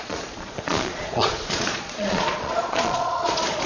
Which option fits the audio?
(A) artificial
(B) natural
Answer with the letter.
A